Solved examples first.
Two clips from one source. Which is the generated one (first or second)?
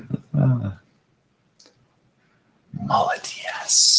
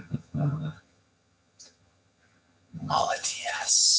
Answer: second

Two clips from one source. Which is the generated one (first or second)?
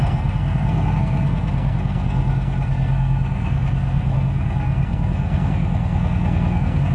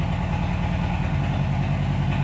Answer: first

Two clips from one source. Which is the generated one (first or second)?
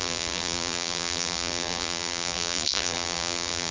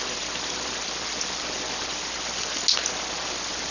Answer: first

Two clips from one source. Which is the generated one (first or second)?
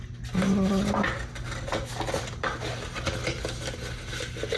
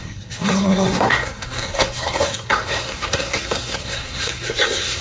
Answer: second